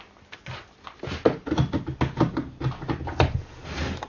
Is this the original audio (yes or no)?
yes